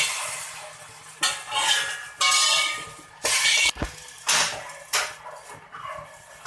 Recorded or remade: recorded